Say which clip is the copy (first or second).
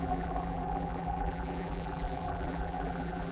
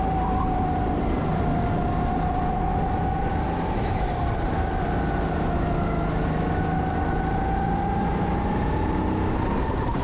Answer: first